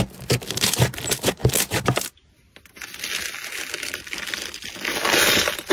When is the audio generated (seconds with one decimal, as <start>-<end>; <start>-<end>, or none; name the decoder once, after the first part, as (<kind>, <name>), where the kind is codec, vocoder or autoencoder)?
none